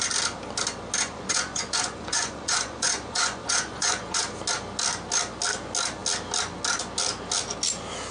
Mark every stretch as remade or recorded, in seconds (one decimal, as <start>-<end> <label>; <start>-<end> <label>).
0.0-1.0 recorded; 1.0-4.2 remade; 4.2-8.1 recorded